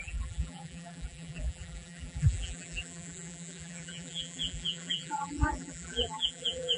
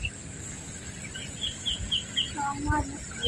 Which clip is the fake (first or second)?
first